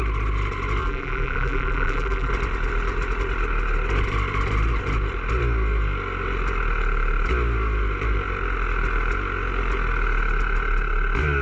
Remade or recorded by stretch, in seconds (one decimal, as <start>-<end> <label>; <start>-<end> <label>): 0.0-0.8 recorded; 0.8-2.3 remade; 2.3-11.4 recorded